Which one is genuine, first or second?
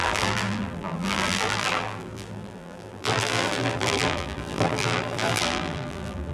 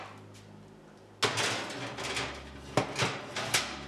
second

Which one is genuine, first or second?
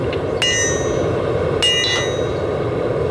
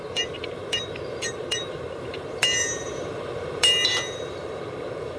first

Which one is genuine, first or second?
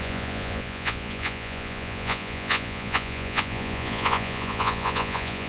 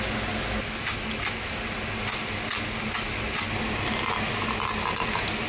second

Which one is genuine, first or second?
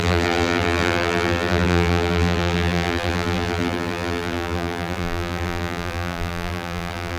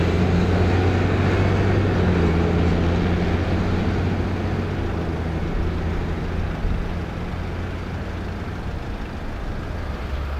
second